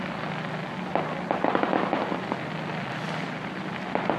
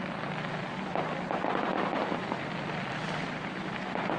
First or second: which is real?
first